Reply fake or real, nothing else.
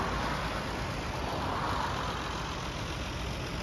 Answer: real